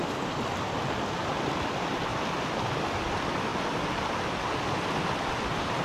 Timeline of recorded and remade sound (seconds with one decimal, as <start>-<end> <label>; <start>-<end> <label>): 0.0-5.8 recorded